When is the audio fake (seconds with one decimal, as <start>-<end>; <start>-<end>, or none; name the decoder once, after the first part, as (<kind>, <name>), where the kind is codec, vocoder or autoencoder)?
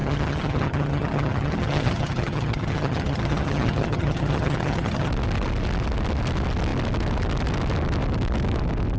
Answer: 0.0-5.1 (vocoder, HiFi-GAN)